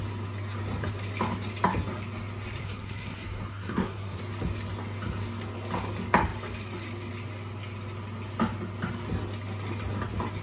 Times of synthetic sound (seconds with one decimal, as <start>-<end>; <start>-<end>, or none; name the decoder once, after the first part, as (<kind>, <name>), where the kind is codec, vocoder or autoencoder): 2.6-4.2 (codec, SNAC)